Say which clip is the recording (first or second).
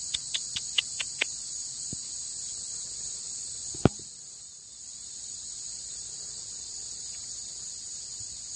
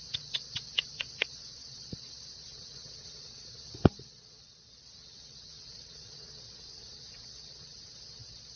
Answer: first